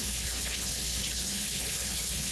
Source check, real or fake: fake